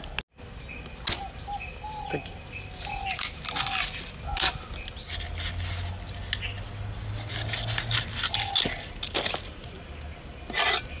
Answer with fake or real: real